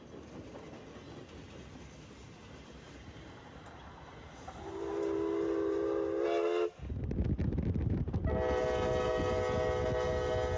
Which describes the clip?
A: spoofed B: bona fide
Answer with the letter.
B